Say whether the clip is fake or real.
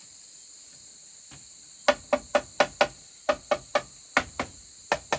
real